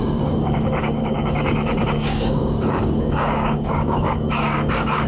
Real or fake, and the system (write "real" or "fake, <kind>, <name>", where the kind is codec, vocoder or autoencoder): fake, codec, DAC